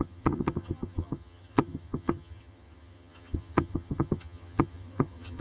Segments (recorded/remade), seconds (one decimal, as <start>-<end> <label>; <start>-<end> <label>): 0.0-5.4 remade